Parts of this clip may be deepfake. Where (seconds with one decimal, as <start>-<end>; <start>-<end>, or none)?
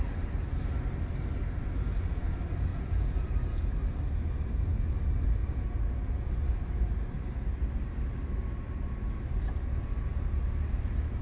2.7-3.7; 5.4-6.3